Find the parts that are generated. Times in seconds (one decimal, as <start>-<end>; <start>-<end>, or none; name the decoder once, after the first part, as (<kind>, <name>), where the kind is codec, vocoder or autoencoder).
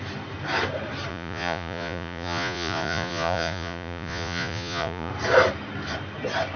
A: 1.1-5.1 (vocoder, Vocos)